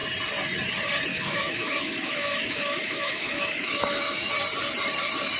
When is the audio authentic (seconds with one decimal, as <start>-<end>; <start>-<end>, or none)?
0.0-1.1; 4.3-5.4